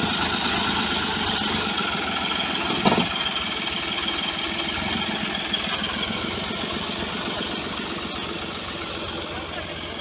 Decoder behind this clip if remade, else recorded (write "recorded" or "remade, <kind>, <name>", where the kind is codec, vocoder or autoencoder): recorded